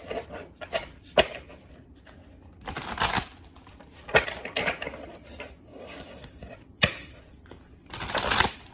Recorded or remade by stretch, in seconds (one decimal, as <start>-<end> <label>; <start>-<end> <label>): 0.0-5.7 recorded; 5.7-6.5 remade; 6.5-8.7 recorded